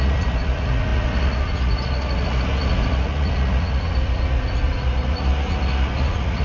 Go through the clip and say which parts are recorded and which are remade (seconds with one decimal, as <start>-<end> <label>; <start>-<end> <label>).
0.0-6.4 remade